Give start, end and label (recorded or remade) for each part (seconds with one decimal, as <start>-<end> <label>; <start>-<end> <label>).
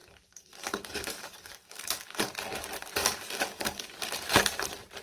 0.0-2.3 remade; 2.3-3.0 recorded; 3.0-4.1 remade; 4.1-5.0 recorded